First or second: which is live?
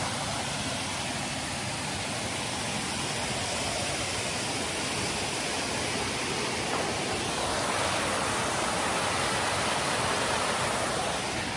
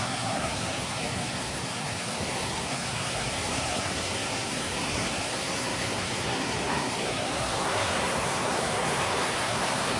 first